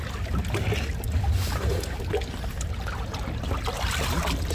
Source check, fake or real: real